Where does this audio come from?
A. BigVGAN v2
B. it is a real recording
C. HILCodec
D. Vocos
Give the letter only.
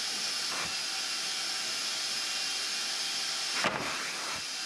B